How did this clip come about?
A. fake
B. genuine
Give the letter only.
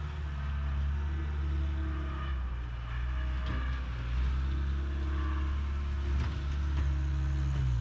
B